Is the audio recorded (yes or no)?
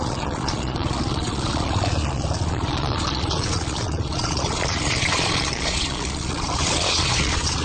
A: no